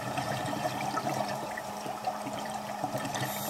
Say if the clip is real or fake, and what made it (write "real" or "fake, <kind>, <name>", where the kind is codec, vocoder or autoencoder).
fake, vocoder, BigVGAN v2